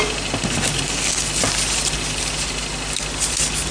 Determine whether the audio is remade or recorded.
recorded